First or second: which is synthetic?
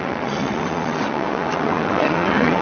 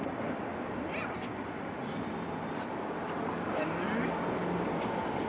first